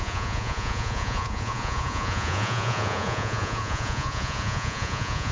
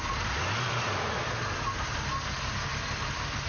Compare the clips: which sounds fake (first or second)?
first